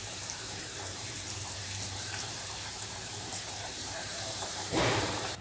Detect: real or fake fake